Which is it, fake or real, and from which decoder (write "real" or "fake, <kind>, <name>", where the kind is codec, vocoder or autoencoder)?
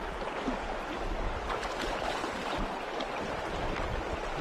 real